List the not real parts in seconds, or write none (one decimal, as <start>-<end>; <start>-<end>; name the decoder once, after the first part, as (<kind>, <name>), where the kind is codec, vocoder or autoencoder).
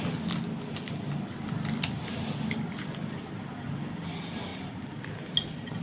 none